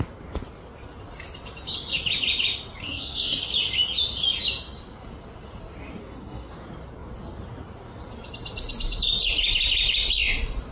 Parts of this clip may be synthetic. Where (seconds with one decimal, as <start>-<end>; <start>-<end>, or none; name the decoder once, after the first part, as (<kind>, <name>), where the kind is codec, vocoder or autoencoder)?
2.8-3.4 (codec, SNAC); 6.0-6.5